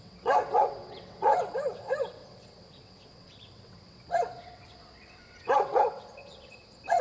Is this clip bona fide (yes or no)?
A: no